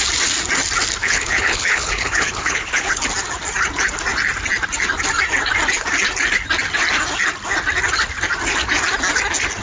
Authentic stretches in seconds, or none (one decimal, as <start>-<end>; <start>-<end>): 0.0-1.0; 3.0-9.6